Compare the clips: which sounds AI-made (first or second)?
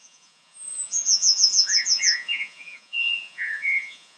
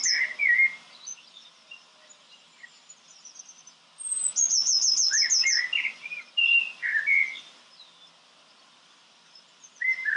first